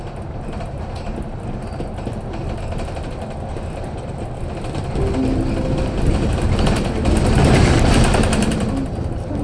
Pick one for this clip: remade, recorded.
recorded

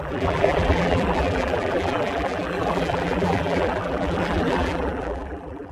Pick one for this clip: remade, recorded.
remade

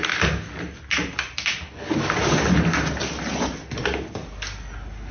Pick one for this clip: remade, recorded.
recorded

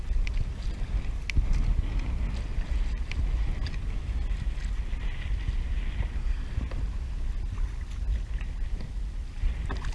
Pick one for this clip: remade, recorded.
recorded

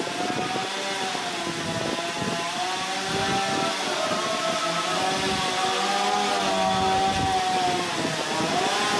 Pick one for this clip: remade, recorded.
recorded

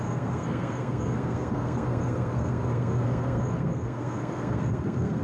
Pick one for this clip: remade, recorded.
remade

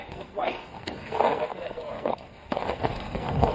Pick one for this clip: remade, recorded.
remade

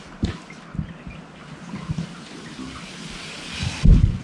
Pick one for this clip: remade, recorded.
recorded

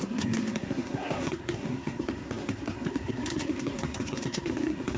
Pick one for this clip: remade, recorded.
remade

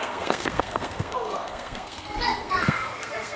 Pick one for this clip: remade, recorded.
remade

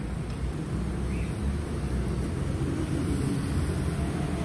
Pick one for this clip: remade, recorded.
recorded